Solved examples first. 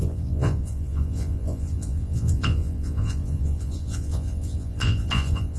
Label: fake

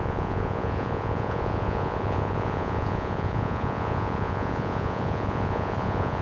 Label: fake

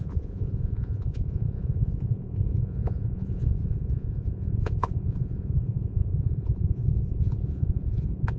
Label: fake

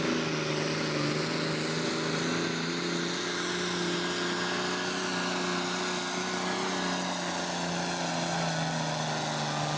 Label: real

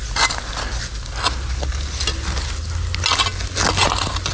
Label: real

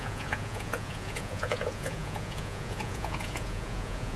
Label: fake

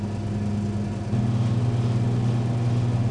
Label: real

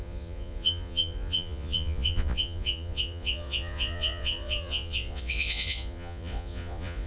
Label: fake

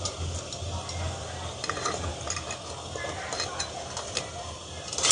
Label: real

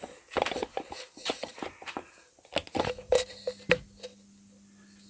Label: real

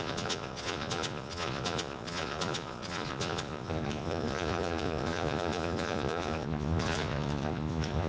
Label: fake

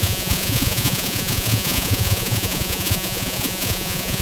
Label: fake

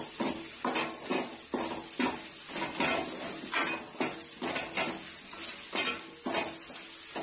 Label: real